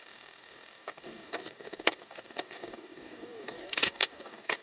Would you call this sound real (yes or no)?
no